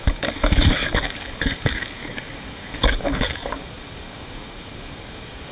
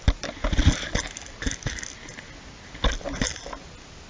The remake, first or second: first